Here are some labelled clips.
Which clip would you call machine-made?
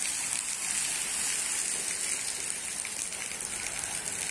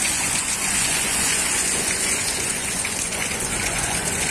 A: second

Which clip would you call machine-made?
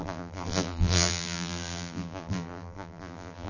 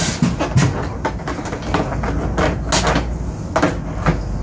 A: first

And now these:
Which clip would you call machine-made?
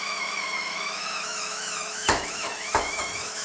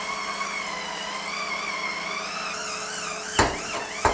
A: first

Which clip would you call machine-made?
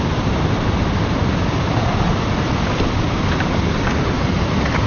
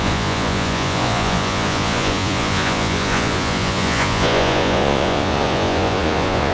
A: second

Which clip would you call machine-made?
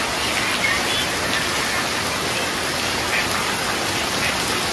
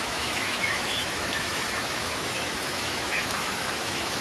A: second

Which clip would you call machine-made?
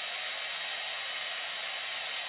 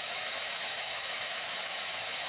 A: second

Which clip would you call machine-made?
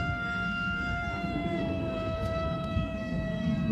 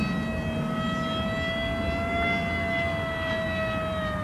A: first